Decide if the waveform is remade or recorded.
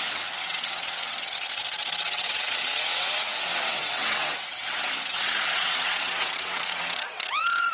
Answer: remade